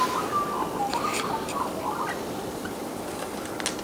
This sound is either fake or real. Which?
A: real